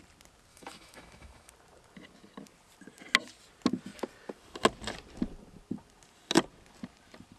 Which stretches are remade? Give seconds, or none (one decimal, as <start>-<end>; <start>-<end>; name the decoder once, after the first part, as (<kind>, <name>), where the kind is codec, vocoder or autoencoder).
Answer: 0.5-1.5 (autoencoder, DAC-VAE)